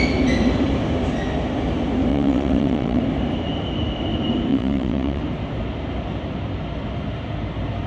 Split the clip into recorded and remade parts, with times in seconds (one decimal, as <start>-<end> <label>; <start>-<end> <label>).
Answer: 0.0-2.1 recorded; 2.1-3.0 remade; 3.0-4.5 recorded; 4.5-5.2 remade; 5.2-7.9 recorded